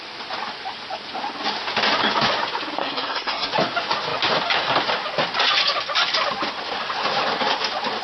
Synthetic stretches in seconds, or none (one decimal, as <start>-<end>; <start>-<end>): 2.8-3.5